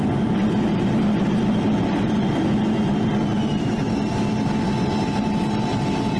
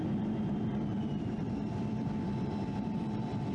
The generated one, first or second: second